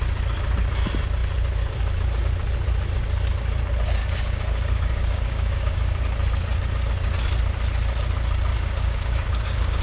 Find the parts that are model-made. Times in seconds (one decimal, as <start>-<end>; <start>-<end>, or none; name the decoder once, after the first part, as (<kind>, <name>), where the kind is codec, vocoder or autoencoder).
4.0-6.0 (codec, DAC); 8.5-9.8